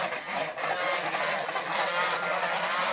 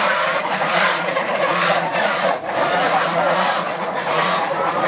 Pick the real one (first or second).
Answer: first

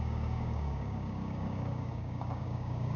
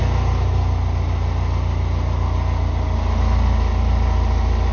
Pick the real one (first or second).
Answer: second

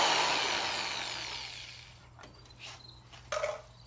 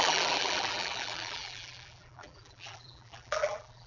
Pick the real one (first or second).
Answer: first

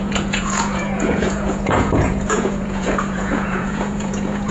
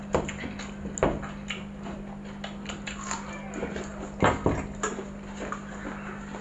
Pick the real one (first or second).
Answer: second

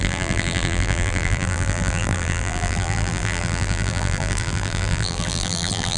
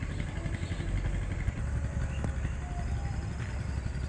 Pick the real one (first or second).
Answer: second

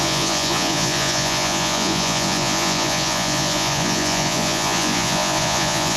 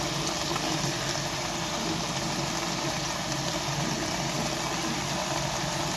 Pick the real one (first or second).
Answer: second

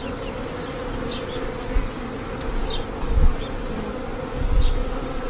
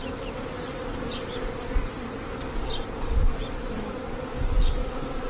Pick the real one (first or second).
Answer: first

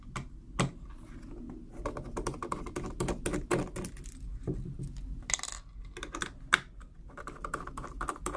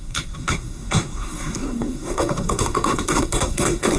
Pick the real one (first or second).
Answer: first